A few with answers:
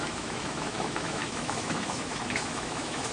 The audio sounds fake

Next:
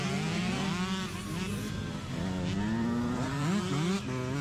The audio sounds real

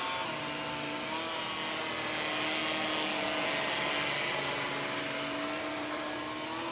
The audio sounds real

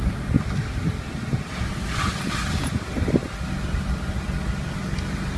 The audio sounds real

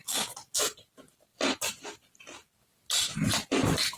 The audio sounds real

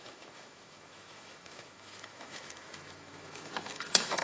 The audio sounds fake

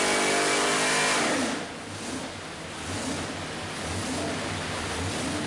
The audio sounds real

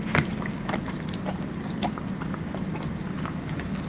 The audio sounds real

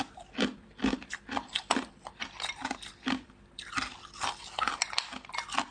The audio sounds real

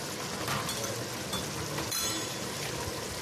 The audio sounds real